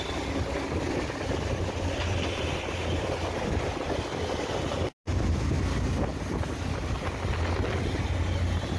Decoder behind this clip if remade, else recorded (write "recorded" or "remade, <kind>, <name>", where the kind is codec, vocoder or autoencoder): recorded